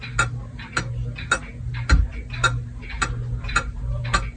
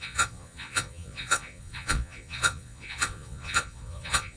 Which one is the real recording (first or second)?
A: first